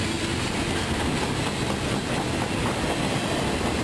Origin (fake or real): real